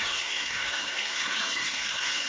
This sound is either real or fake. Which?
fake